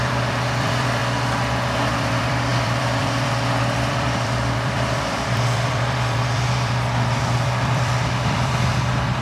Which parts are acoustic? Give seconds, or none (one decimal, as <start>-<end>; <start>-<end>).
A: 1.0-1.9